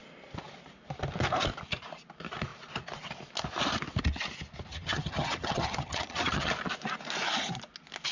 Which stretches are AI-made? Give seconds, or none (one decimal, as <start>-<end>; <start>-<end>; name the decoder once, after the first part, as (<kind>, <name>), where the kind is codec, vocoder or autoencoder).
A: 4.7-6.5 (vocoder, HiFi-GAN)